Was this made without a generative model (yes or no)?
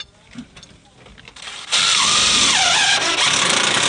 yes